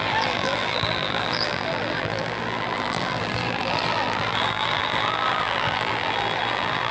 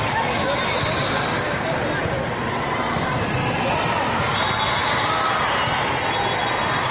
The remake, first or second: first